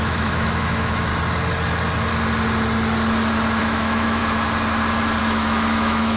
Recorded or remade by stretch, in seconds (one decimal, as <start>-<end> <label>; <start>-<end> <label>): 0.0-1.1 remade; 1.1-3.6 recorded; 3.6-4.2 remade; 4.2-5.2 recorded; 5.2-6.2 remade